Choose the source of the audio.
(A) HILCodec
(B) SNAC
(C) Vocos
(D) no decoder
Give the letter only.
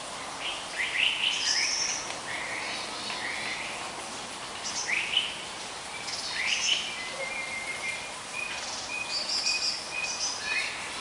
D